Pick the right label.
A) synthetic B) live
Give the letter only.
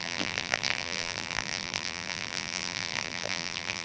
A